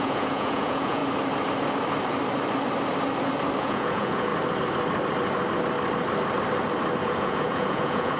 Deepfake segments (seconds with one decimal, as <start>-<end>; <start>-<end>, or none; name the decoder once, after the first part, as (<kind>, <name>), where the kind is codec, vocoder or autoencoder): 0.0-1.0 (vocoder, Vocos); 3.6-4.3; 7.0-8.2